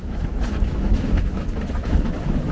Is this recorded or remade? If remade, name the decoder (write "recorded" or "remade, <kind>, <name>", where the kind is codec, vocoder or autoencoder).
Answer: remade, autoencoder, DAC-VAE